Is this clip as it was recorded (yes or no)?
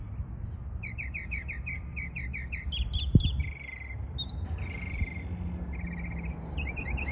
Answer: yes